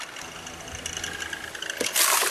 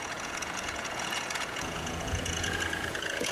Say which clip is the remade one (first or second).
second